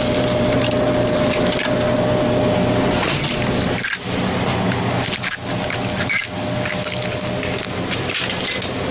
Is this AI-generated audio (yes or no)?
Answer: no